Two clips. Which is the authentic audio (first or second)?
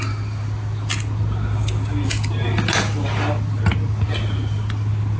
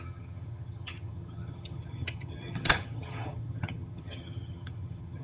first